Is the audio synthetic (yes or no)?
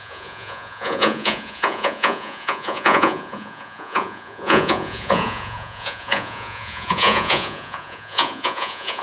yes